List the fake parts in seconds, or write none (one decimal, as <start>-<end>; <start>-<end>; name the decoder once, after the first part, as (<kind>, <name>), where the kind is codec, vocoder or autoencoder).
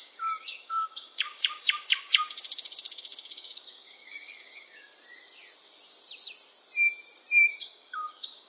0.0-4.9 (codec, DAC); 7.5-8.5